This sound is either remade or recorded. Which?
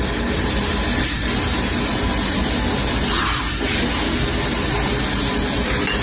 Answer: recorded